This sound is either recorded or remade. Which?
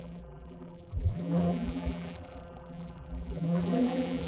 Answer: remade